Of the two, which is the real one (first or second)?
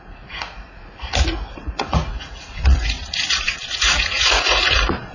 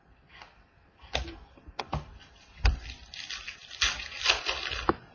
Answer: second